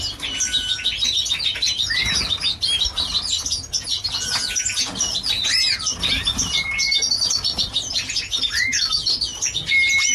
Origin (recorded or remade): recorded